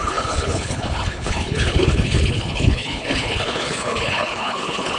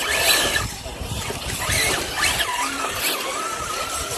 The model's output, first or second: first